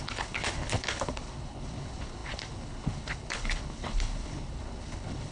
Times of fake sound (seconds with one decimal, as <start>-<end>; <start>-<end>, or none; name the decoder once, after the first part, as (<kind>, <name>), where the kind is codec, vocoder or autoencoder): 0.0-5.3 (codec, HILCodec)